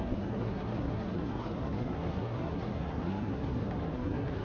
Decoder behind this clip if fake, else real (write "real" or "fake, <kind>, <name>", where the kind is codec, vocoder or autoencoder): fake, codec, SNAC